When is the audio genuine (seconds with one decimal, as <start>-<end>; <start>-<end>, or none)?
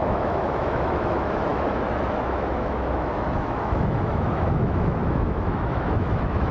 none